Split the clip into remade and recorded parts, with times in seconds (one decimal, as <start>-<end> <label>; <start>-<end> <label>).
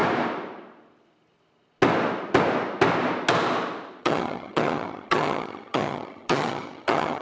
0.0-4.0 recorded; 4.0-7.2 remade